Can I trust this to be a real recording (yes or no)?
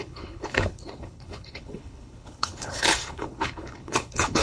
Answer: no